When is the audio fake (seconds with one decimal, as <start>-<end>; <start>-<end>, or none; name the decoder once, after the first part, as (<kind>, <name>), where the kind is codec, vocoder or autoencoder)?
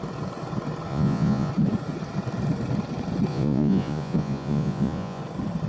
0.9-1.5 (vocoder, Vocos); 3.3-5.2